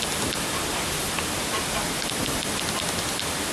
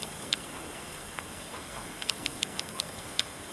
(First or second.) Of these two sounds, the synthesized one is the second